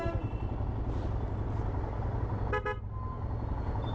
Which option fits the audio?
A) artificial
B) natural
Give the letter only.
B